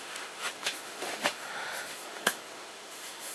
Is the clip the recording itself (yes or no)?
no